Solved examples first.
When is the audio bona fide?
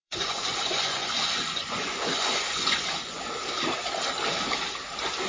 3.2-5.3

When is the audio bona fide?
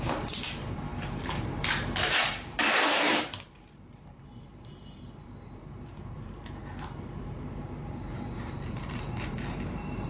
6.6-7.2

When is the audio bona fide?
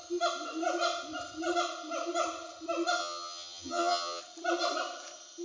0.0-3.0; 4.2-5.4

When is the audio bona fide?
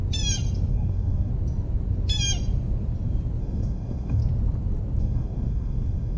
0.0-0.7; 1.3-3.4; 4.2-5.0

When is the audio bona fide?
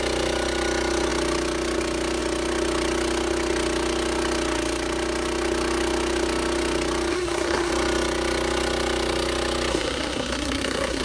0.0-7.1; 7.7-9.7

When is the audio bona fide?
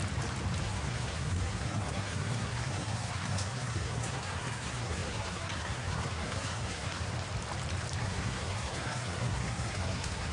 0.0-0.6; 7.1-8.0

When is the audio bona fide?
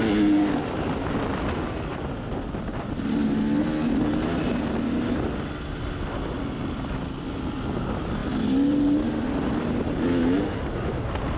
0.0-11.4